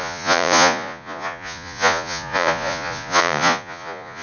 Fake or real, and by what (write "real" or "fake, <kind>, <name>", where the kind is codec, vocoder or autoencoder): fake, vocoder, Vocos